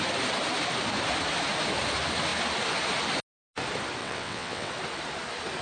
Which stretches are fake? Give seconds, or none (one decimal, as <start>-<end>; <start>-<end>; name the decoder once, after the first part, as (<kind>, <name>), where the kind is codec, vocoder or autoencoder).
4.0-4.7 (vocoder, WaveNeXt)